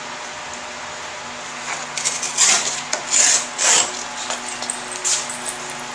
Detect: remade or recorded recorded